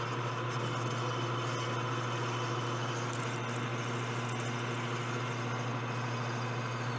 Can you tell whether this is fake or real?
real